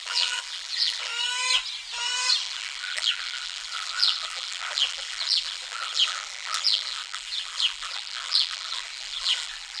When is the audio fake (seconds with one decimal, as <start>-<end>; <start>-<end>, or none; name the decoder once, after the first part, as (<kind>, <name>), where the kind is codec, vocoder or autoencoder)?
0.0-1.1 (vocoder, BigVGAN v2); 2.4-9.8